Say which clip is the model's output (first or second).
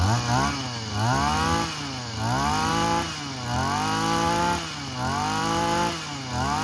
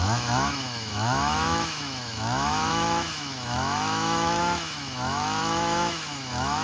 second